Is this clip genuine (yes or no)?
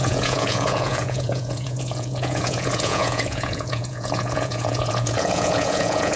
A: no